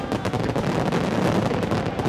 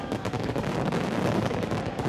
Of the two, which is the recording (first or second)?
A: first